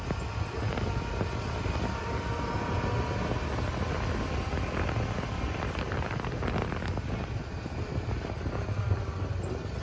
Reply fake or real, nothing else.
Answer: real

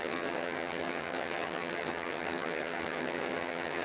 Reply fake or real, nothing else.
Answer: fake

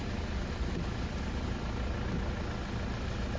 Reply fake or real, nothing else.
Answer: real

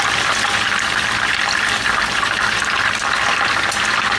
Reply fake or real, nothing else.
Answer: real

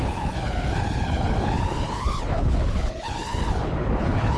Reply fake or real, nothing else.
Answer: fake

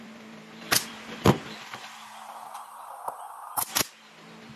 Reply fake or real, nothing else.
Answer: fake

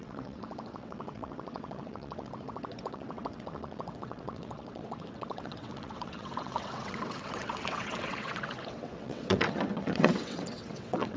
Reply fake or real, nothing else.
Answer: fake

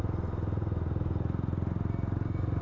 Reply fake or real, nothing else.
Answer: real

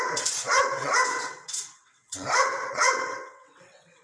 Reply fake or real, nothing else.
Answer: fake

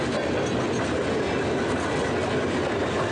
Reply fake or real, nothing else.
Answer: real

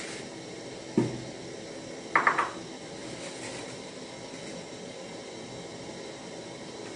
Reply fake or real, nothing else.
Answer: real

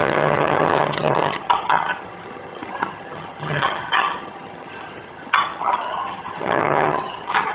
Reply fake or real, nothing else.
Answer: fake